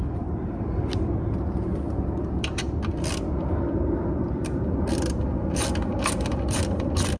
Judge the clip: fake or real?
fake